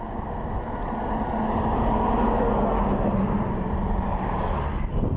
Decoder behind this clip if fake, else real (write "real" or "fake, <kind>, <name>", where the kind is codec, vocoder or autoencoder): real